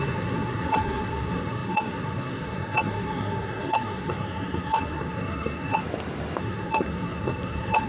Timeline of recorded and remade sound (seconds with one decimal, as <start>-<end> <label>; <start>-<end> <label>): 0.0-5.8 remade; 5.8-6.4 recorded; 6.4-7.9 remade

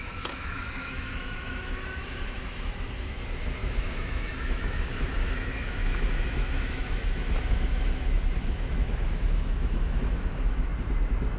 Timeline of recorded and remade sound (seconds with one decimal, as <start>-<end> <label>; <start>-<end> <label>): 0.0-10.7 remade; 10.7-11.4 recorded

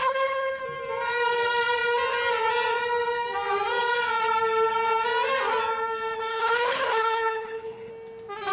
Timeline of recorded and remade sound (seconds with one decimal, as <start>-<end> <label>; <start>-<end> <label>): 0.0-0.6 remade; 0.6-6.3 recorded; 6.3-7.9 remade; 7.9-8.5 recorded

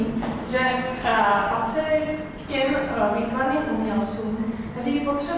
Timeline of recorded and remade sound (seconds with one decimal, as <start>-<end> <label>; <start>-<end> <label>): 0.0-5.4 recorded

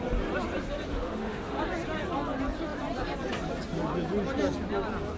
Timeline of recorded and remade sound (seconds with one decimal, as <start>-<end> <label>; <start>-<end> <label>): 0.0-0.9 recorded; 0.9-1.6 remade; 1.6-5.2 recorded

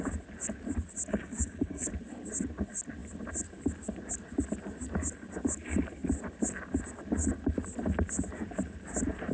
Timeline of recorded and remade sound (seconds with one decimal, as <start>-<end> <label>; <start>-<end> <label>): 0.0-1.1 recorded; 1.1-1.9 remade; 1.9-9.3 recorded

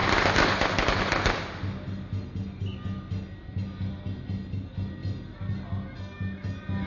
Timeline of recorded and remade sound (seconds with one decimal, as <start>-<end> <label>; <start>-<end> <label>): 0.0-6.9 recorded

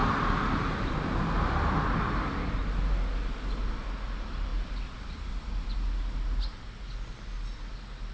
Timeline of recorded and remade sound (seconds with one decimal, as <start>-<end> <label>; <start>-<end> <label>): 0.0-8.1 recorded